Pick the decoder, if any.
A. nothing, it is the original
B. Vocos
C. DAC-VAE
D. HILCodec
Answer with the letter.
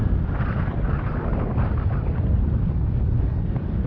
A